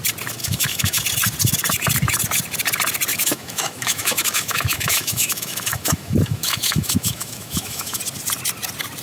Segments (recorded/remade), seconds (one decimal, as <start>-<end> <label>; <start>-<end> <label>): 0.0-0.4 recorded; 0.4-1.0 remade; 1.0-3.1 recorded; 3.1-8.0 remade; 8.0-9.0 recorded